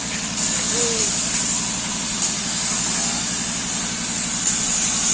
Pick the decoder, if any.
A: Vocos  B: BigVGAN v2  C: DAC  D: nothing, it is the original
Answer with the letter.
D